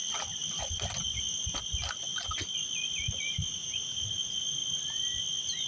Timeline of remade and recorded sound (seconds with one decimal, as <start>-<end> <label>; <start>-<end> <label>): 0.0-5.7 recorded